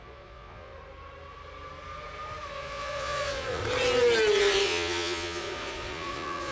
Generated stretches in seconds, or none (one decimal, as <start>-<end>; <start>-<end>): 0.0-0.7; 2.5-3.6; 4.4-6.5